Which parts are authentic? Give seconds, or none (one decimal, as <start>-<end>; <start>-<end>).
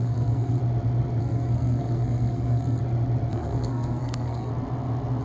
0.6-1.2; 2.8-3.3; 4.5-5.2